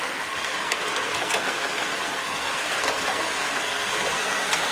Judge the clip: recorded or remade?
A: remade